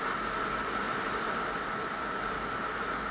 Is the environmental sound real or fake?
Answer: real